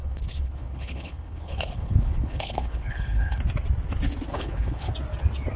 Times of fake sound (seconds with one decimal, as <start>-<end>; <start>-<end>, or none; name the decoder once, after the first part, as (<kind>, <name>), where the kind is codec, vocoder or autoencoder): 0.0-3.4 (codec, HILCodec); 4.3-4.9